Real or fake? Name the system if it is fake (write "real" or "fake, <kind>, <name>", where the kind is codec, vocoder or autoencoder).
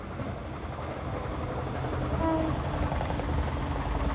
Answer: real